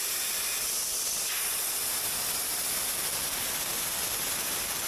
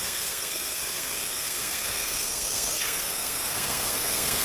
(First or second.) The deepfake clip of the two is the second